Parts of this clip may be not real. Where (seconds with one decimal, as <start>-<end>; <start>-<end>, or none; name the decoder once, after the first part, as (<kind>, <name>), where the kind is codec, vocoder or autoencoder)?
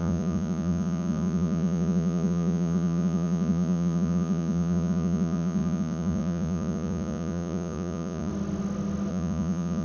0.0-8.3 (vocoder, Vocos); 9.1-9.8